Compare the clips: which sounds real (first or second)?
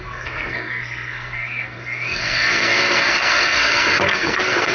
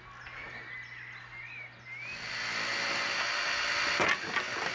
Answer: second